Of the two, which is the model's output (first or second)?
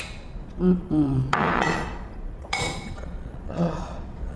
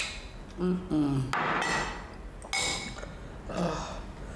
first